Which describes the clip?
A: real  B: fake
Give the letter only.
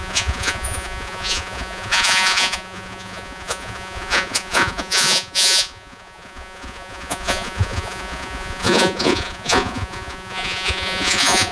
B